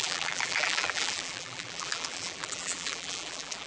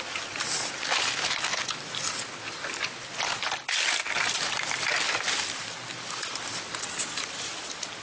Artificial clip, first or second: first